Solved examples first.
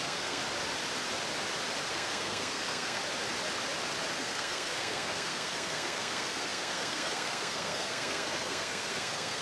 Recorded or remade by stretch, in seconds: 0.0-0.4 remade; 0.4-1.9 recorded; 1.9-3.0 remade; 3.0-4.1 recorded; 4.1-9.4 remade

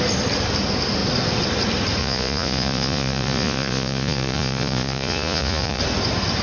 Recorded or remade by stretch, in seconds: 0.0-2.0 recorded; 2.0-5.8 remade; 5.8-6.4 recorded

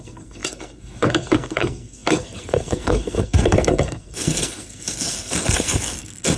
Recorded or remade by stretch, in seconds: 0.0-6.4 remade

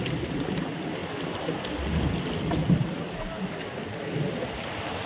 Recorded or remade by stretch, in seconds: 0.0-5.1 recorded

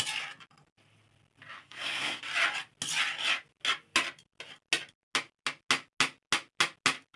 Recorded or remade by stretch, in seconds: 0.0-1.6 recorded; 1.6-2.2 remade; 2.2-7.2 recorded

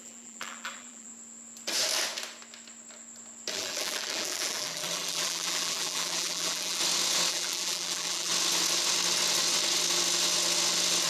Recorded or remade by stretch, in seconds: 0.0-1.1 remade; 1.1-3.5 recorded; 3.5-6.8 remade; 6.8-7.3 recorded; 7.3-8.3 remade; 8.3-11.1 recorded

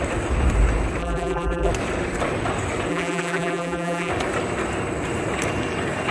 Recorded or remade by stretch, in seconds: 0.0-1.0 recorded; 1.0-1.7 remade; 1.7-2.9 recorded; 2.9-4.1 remade; 4.1-6.1 recorded